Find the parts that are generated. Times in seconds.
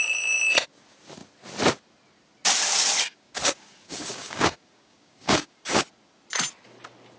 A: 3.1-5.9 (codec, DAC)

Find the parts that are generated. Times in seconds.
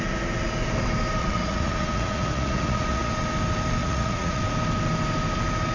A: 1.2-3.1 (vocoder, Vocos); 3.8-4.4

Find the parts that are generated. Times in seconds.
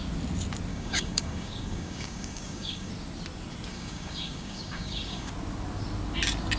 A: 0.7-2.9 (codec, DAC); 3.7-5.3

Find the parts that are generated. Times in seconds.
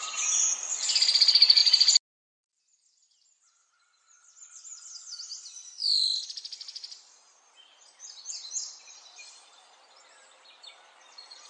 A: none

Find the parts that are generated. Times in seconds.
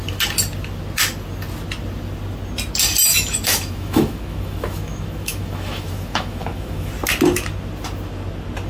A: 3.1-6.9 (autoencoder, DAC-VAE)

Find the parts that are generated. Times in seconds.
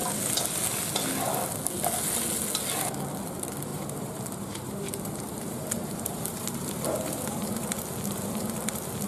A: 3.7-7.7 (vocoder, BigVGAN v2)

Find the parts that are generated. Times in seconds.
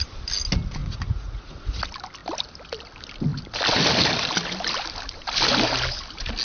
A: 0.8-1.8 (vocoder, Vocos)